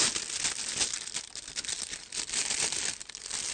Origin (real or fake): real